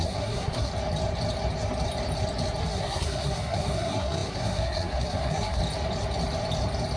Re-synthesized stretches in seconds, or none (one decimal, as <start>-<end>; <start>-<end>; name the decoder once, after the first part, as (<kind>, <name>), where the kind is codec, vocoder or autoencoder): 0.0-0.7 (codec, SNAC); 2.6-5.6